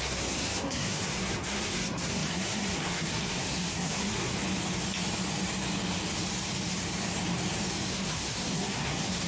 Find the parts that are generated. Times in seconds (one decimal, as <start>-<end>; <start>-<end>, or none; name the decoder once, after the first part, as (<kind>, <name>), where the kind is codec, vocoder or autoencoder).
0.0-4.3 (codec, SNAC); 7.9-9.3